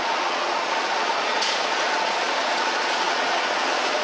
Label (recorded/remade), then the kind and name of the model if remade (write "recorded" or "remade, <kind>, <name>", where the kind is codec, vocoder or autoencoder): remade, vocoder, Vocos